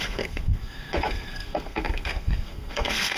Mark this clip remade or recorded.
remade